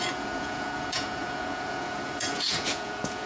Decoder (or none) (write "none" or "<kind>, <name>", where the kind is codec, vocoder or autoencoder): vocoder, Vocos